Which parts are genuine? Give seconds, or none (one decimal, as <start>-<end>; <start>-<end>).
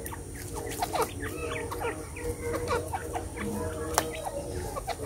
0.0-5.1